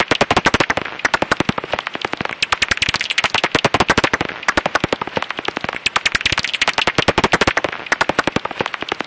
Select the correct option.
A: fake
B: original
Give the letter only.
B